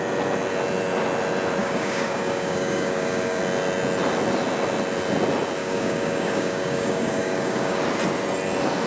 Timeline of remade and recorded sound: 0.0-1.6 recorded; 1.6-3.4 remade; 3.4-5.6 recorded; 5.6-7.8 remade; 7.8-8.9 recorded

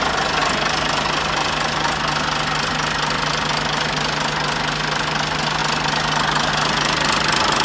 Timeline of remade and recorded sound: 0.0-7.6 recorded

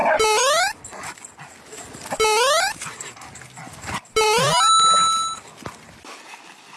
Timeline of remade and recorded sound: 0.0-6.8 recorded

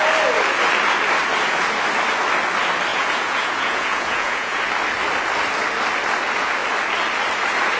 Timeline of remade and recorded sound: 0.0-2.9 recorded; 2.9-4.6 remade; 4.6-7.8 recorded

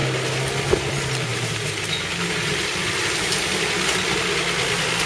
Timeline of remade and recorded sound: 0.0-1.3 recorded; 1.3-2.5 remade; 2.5-5.1 recorded